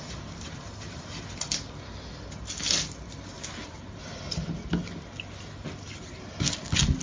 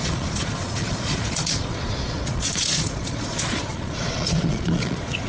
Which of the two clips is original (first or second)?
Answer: first